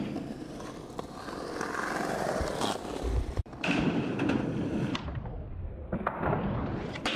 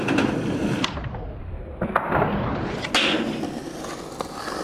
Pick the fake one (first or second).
first